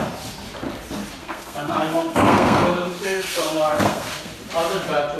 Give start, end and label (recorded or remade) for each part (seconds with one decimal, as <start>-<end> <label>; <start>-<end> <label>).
0.0-1.2 recorded; 1.2-4.3 remade; 4.3-5.2 recorded